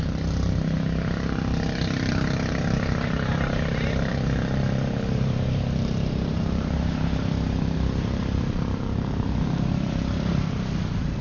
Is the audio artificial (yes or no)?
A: yes